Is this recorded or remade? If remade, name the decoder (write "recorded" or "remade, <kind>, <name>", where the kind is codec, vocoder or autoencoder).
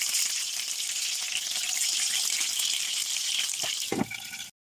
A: recorded